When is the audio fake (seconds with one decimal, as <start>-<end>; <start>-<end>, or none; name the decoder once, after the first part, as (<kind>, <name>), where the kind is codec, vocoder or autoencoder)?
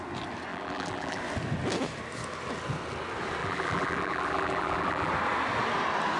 0.5-1.2 (vocoder, BigVGAN v2); 3.4-5.1